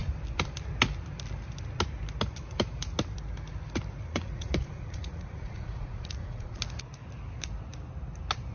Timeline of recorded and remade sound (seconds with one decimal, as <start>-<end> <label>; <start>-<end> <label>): 0.0-4.1 recorded; 4.1-6.6 remade; 6.6-8.5 recorded